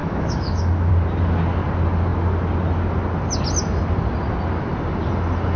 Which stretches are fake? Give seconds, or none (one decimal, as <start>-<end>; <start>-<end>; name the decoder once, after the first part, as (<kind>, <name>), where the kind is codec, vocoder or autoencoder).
0.0-0.9 (autoencoder, DAC-VAE)

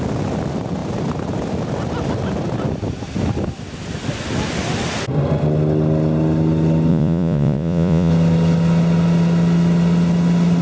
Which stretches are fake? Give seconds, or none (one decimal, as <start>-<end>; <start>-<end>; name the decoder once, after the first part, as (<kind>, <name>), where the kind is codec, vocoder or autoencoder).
6.9-8.1 (vocoder, Vocos)

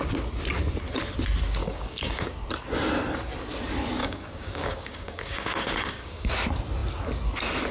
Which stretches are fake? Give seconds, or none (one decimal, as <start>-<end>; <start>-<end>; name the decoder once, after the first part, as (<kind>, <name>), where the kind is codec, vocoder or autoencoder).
1.6-2.3 (codec, DAC); 4.0-6.3

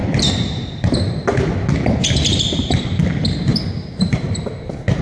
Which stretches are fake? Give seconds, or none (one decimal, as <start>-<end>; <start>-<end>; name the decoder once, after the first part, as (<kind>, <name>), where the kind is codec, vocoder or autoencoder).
0.0-0.9 (vocoder, BigVGAN v2); 3.5-4.3

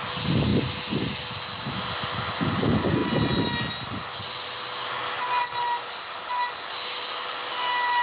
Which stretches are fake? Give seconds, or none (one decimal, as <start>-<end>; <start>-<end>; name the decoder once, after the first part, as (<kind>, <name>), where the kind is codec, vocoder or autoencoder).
none

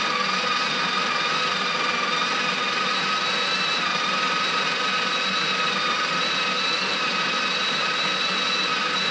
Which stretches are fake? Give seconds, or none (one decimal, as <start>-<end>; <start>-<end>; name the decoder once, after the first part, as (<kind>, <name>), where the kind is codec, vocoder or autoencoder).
none

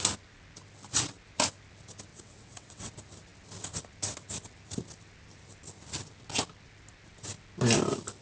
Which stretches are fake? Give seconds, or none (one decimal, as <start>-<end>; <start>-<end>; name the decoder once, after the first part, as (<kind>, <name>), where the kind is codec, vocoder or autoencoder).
2.1-2.9 (vocoder, WaveNeXt)